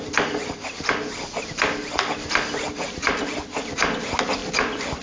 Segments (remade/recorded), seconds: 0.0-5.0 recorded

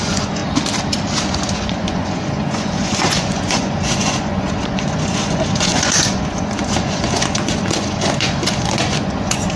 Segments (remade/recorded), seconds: 0.0-0.4 remade; 0.4-1.2 recorded; 1.2-9.6 remade

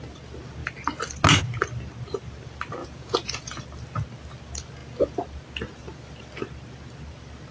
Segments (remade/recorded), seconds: 0.0-2.8 recorded; 2.8-3.6 remade; 3.6-7.5 recorded

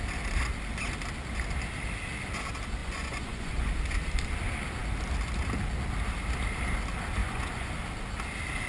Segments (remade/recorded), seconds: 0.0-2.8 recorded; 2.8-3.7 remade; 3.7-7.2 recorded; 7.2-7.7 remade; 7.7-8.7 recorded

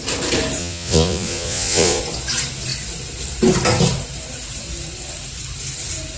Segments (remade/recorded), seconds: 0.0-0.6 recorded; 0.6-2.0 remade; 2.0-6.2 recorded

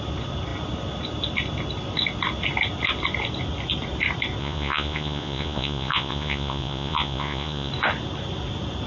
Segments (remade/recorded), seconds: 0.0-4.4 recorded; 4.4-7.7 remade; 7.7-8.9 recorded

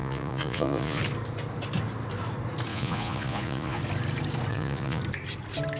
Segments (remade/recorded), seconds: 0.0-1.0 remade; 1.0-2.7 recorded; 2.7-3.8 remade; 3.8-4.5 recorded; 4.5-5.0 remade; 5.0-5.8 recorded